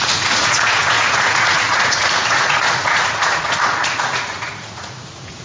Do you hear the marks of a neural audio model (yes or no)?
yes